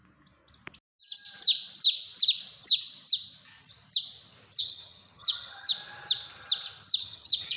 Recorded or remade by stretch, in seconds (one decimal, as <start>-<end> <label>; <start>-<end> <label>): 0.0-4.6 recorded; 4.6-5.7 remade; 5.7-7.0 recorded; 7.0-7.6 remade